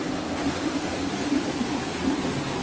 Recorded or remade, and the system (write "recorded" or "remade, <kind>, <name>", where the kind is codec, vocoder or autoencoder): recorded